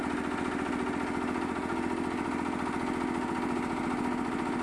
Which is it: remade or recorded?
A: recorded